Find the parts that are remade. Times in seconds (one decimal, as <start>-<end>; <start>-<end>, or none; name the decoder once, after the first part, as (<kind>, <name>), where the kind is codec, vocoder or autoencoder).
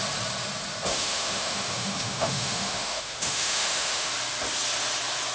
0.9-4.1 (autoencoder, DAC-VAE)